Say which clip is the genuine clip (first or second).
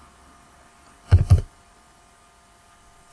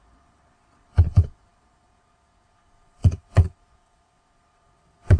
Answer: first